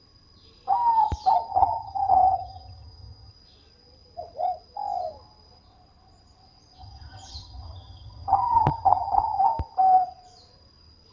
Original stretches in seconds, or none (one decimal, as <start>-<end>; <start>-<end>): 0.0-1.5; 3.3-6.8; 9.4-11.1